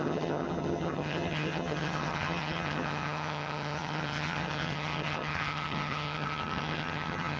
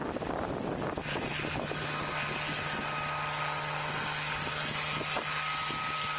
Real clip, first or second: second